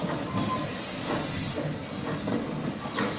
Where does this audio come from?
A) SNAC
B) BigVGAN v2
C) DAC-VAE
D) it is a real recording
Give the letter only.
D